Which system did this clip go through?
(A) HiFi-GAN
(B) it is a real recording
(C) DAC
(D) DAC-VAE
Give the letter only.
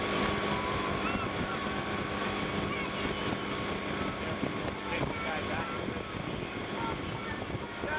B